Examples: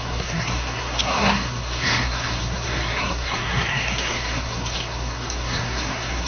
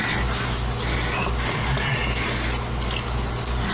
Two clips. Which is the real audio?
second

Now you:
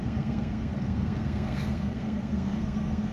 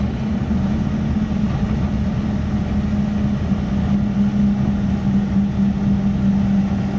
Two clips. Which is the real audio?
second